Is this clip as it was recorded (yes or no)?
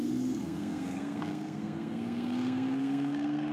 no